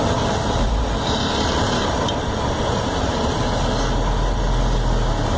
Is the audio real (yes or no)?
yes